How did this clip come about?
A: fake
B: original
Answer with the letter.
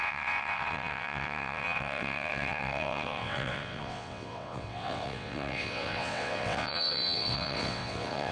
A